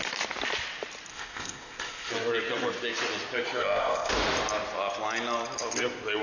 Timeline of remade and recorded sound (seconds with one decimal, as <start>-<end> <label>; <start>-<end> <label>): 0.0-1.1 recorded; 1.1-2.1 remade; 2.1-3.6 recorded; 3.6-4.1 remade; 4.1-6.2 recorded